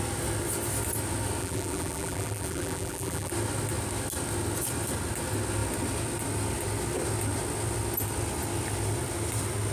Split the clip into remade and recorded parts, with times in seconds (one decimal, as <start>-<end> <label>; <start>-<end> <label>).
0.0-1.4 recorded; 1.4-3.3 remade; 3.3-9.7 recorded